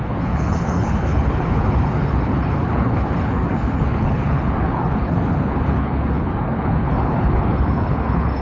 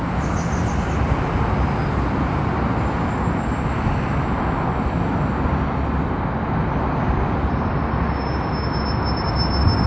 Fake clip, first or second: first